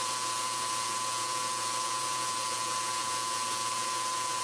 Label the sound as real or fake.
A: fake